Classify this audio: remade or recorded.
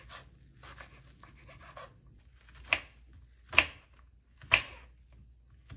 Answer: recorded